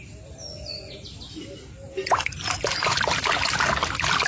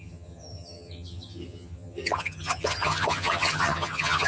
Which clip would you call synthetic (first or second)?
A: second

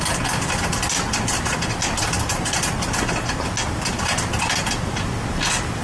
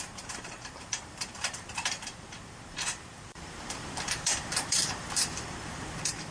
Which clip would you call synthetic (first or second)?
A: second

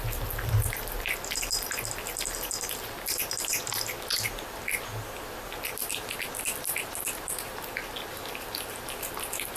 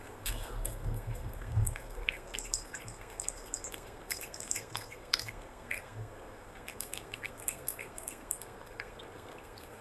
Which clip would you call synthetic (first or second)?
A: second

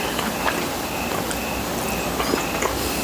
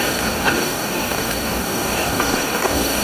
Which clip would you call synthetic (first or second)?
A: second